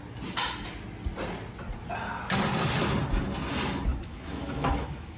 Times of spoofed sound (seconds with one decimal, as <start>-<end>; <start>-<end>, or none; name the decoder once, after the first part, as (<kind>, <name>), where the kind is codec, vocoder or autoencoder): 3.9-5.2 (autoencoder, DAC-VAE)